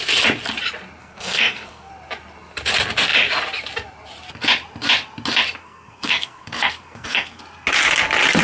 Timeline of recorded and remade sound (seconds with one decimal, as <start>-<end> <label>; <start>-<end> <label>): 0.0-1.0 recorded; 1.0-1.9 remade; 1.9-5.6 recorded; 5.6-7.4 remade; 7.4-8.4 recorded